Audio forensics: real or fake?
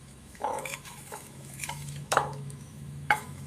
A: fake